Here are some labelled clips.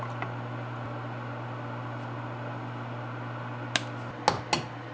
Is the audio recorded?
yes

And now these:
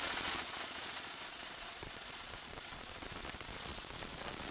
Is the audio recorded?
no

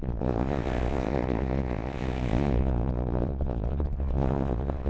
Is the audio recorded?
no